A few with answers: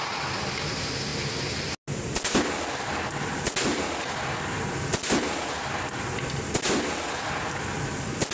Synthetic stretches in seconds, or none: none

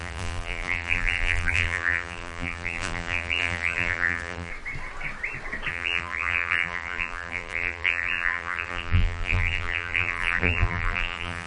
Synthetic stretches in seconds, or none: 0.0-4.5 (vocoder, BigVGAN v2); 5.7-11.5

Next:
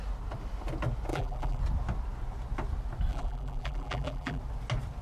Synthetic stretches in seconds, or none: 1.1-1.6 (vocoder, BigVGAN v2); 3.1-4.4